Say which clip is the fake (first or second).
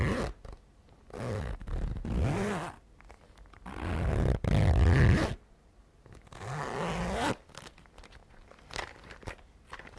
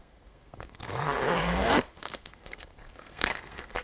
second